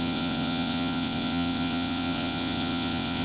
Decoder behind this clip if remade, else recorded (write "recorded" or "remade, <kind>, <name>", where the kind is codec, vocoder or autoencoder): remade, vocoder, WaveNeXt